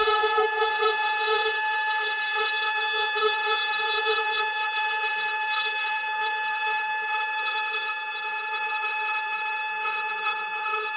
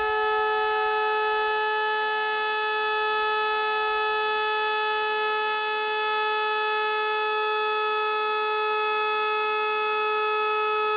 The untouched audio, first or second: second